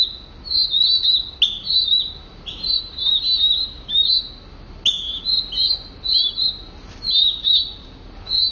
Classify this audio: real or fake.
real